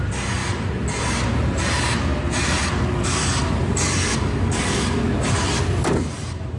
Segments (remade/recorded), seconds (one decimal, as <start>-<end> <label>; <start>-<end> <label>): 0.0-4.1 recorded; 4.1-5.0 remade; 5.0-6.6 recorded